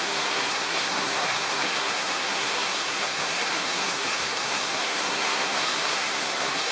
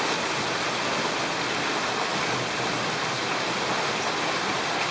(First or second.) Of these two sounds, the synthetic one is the first